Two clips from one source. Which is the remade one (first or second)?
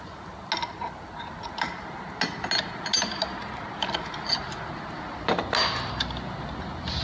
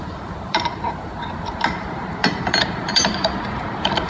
second